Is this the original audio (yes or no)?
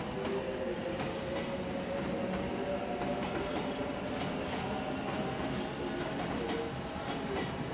yes